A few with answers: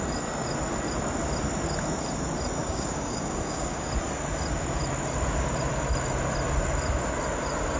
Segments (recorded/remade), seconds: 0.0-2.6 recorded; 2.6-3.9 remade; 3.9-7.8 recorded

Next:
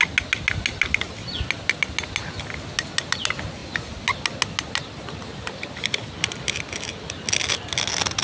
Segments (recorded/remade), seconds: 0.0-8.2 recorded

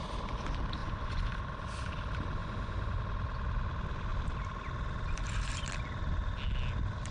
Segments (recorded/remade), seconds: 0.0-0.8 recorded; 0.8-1.3 remade; 1.3-2.4 recorded; 2.4-3.0 remade; 3.0-7.1 recorded